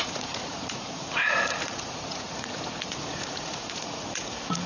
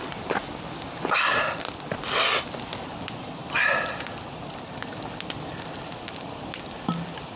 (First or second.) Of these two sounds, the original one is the second